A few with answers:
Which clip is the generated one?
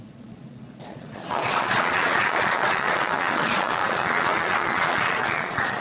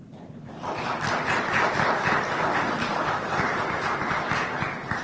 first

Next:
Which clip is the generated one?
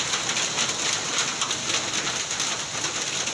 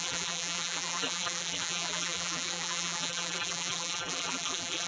second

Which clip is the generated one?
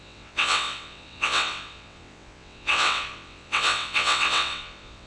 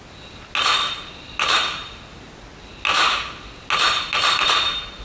first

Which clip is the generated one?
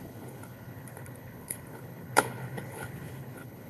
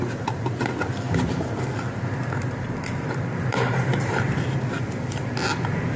first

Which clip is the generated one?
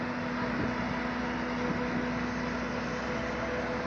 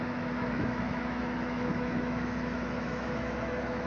second